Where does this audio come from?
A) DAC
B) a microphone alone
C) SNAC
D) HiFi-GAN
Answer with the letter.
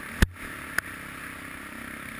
B